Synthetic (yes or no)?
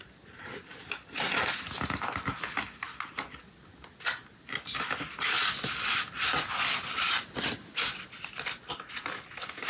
no